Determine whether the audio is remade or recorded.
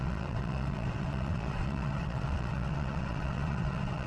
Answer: remade